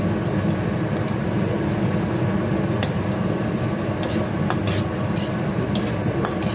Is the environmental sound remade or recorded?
recorded